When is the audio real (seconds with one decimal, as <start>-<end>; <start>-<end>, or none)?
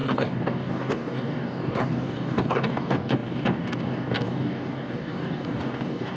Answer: none